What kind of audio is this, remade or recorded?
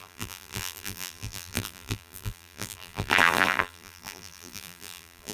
remade